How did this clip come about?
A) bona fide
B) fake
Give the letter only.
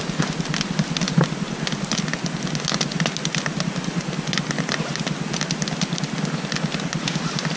A